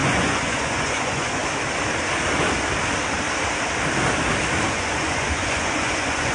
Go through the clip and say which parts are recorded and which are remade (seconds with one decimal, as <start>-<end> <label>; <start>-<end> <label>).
0.0-1.4 remade; 1.4-4.7 recorded; 4.7-6.3 remade